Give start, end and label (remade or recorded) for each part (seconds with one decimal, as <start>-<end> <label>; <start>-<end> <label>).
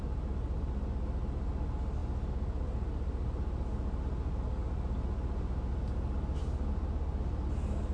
0.0-7.9 recorded